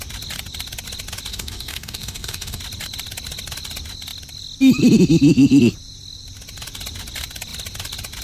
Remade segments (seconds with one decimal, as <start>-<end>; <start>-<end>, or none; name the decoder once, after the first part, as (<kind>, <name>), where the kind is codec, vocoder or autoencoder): 1.3-2.6 (codec, DAC)